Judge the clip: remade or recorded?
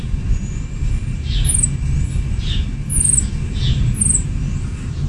recorded